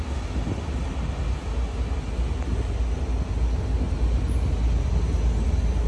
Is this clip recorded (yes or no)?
yes